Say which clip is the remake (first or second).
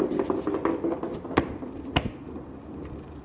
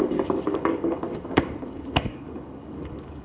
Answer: second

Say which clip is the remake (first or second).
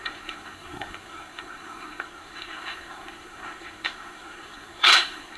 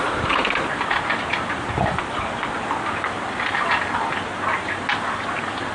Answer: first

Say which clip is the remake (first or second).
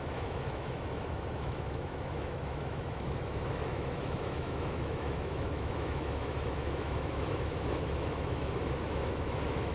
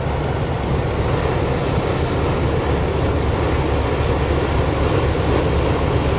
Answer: first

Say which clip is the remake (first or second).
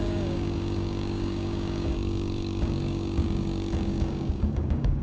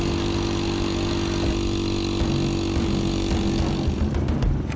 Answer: first